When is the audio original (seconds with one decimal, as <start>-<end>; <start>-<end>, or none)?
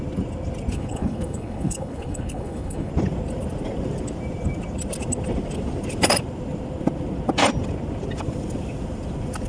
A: 0.0-0.7; 2.9-9.5